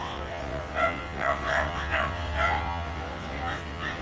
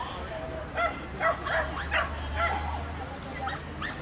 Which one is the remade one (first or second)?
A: first